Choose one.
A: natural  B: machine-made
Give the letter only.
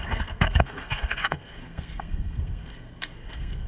B